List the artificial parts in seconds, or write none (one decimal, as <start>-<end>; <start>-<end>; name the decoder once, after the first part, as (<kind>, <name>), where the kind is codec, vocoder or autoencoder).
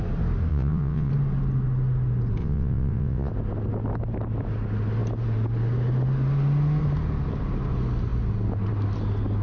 0.5-1.1 (vocoder, WaveNeXt); 2.4-3.3